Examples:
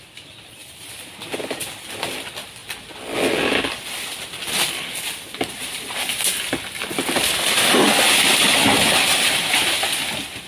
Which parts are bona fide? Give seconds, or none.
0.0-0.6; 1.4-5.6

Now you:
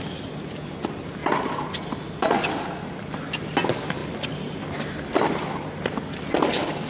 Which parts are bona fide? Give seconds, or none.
0.0-6.9

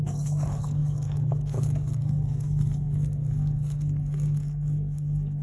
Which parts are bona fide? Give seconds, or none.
none

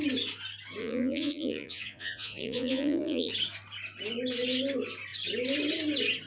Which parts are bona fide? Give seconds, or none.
0.0-0.8; 3.3-6.3